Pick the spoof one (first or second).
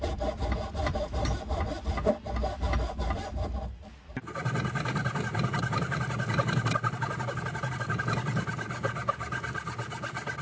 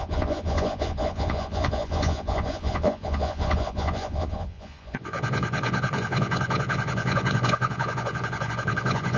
second